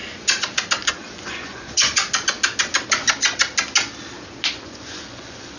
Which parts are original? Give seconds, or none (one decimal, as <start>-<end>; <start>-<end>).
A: 0.0-0.9; 2.0-4.5